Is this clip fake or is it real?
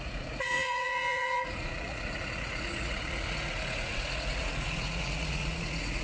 fake